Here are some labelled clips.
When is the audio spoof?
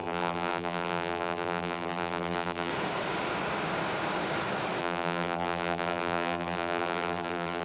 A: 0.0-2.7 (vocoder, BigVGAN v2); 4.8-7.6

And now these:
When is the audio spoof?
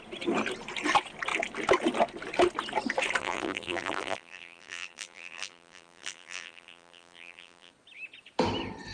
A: 3.2-7.7 (vocoder, BigVGAN v2)